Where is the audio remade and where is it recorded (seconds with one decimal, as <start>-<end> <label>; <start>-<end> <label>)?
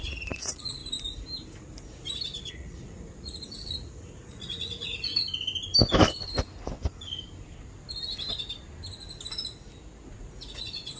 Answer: 0.0-0.8 remade; 0.8-2.5 recorded; 2.5-5.1 remade; 5.1-10.1 recorded; 10.1-11.0 remade